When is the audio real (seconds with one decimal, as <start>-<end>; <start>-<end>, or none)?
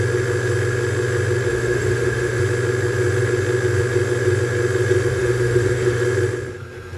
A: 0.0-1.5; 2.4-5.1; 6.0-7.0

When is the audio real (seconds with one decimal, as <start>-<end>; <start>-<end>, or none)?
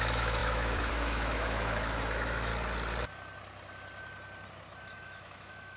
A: 2.5-4.8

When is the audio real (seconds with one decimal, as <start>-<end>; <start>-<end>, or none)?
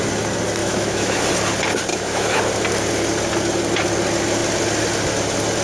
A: 0.0-0.6; 1.2-1.9; 2.4-5.6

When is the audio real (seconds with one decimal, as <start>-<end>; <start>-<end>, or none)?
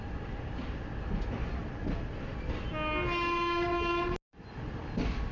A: 0.0-5.3